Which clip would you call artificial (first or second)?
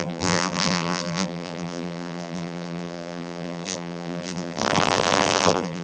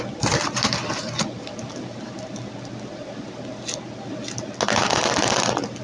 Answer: first